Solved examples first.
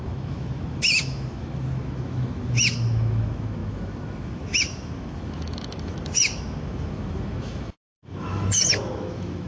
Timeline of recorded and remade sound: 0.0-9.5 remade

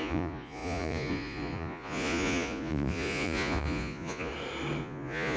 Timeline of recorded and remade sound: 0.0-4.3 remade; 4.3-4.8 recorded; 4.8-5.4 remade